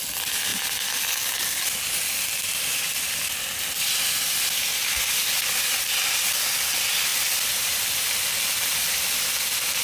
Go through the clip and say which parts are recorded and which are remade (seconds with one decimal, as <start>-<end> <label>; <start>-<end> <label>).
0.0-9.8 recorded